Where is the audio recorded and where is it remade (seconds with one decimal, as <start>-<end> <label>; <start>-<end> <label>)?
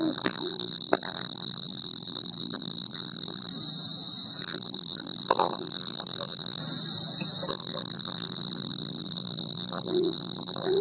0.0-3.5 remade; 3.5-4.4 recorded; 4.4-6.6 remade; 6.6-7.5 recorded; 7.5-10.8 remade